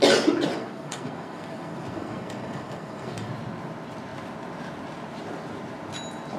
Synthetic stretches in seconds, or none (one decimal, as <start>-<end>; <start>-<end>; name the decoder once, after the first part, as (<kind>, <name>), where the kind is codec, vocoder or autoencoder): 0.5-3.3 (codec, SNAC)